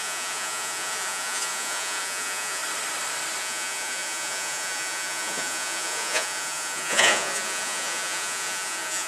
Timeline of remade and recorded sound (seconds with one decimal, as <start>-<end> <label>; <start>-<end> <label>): 0.0-2.6 remade; 2.6-3.4 recorded; 3.4-9.1 remade